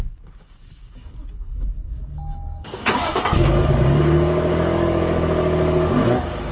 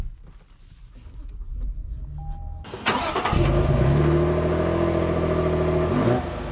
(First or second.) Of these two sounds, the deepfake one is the first